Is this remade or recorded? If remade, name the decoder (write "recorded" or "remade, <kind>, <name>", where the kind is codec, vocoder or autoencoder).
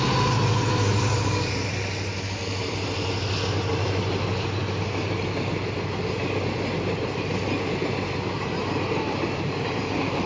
recorded